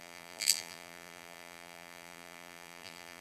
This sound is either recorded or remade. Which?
remade